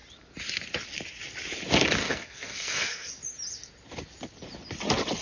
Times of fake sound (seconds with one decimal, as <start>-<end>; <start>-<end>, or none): 2.0-3.1